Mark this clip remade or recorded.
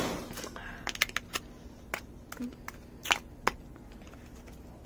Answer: recorded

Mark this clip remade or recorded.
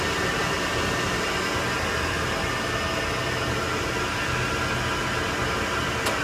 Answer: recorded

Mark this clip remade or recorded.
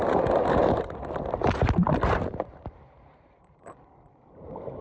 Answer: remade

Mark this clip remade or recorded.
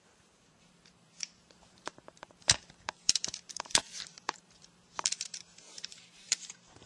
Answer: remade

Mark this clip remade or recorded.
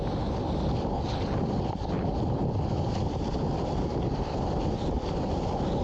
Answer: recorded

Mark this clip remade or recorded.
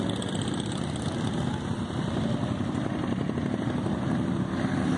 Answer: recorded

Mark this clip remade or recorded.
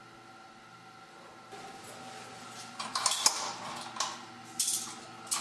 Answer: recorded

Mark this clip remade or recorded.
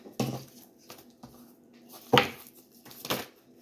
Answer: recorded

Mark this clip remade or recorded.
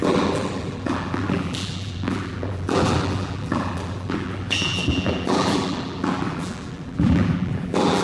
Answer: remade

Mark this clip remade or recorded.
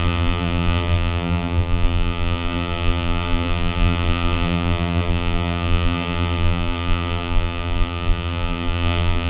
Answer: remade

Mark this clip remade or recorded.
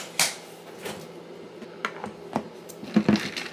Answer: recorded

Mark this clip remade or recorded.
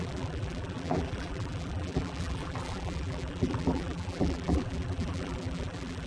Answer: remade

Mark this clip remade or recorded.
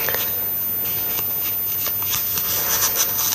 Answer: recorded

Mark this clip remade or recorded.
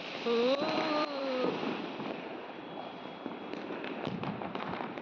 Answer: remade